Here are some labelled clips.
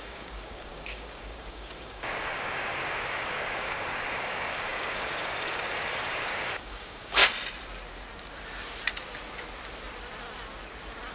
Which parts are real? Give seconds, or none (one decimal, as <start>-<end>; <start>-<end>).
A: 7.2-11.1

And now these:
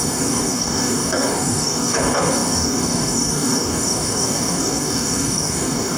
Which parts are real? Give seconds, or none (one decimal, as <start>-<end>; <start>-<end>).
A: none

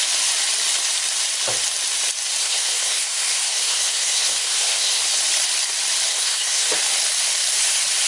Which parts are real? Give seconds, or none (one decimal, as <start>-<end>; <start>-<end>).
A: 0.0-2.4; 5.0-6.1; 6.7-8.1